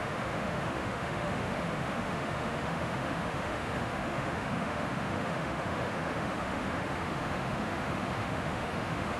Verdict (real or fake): fake